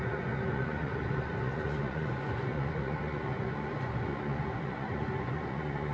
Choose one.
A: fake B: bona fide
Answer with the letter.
A